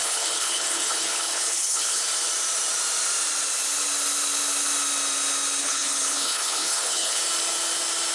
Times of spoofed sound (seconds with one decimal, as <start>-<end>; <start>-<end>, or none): 0.0-2.0; 5.6-7.2